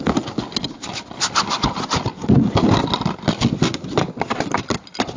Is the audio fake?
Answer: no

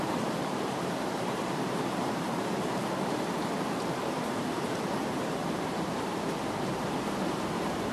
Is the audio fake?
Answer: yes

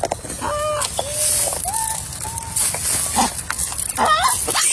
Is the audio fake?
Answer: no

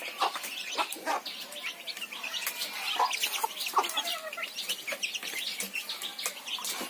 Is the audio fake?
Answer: no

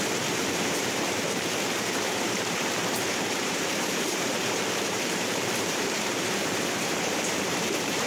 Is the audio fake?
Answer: yes